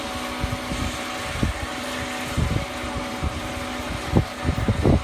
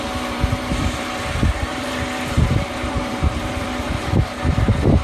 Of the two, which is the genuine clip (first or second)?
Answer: first